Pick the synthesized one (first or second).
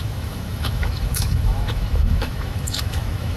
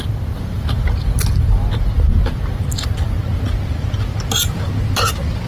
first